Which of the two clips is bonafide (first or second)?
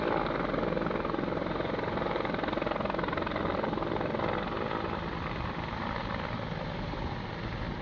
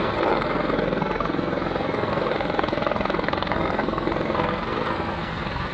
first